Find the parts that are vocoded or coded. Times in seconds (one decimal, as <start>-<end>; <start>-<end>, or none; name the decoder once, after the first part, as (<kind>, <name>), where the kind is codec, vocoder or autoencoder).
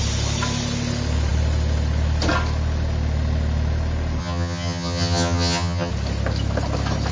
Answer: 4.2-5.9 (vocoder, HiFi-GAN)